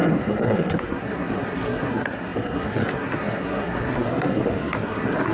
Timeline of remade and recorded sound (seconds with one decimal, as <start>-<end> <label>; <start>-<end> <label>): 0.0-5.3 remade